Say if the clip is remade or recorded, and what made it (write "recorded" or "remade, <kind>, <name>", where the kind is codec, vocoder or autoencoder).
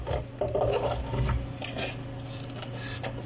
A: recorded